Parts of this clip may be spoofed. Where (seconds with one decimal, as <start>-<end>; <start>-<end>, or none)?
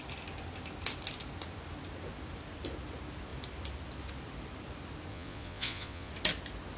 5.1-6.1